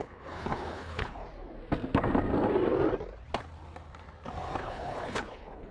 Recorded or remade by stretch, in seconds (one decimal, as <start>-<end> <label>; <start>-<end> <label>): 0.0-1.2 remade; 1.2-4.6 recorded; 4.6-5.7 remade